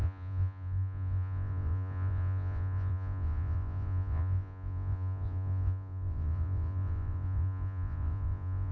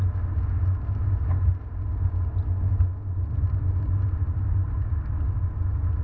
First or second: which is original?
second